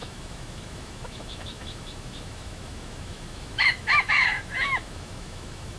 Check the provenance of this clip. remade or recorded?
remade